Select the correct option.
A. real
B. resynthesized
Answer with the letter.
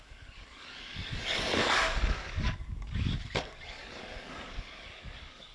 B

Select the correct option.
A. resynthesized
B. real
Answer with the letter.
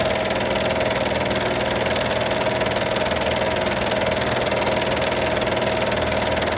B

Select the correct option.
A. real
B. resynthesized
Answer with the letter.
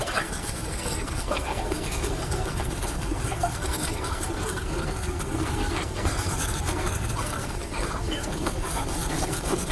B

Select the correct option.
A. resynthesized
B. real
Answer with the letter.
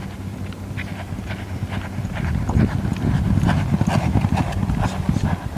B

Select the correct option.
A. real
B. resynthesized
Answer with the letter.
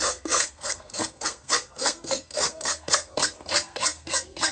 B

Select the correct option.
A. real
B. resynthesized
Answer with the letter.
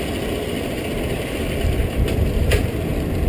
B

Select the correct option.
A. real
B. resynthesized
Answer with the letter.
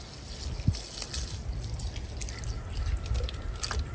A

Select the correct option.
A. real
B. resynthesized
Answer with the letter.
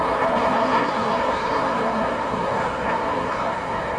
B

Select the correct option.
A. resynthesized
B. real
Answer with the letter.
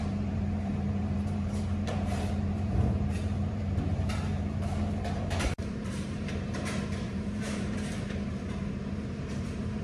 A